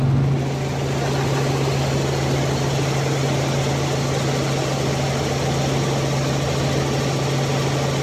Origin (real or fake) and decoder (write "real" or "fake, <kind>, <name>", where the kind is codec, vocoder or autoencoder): real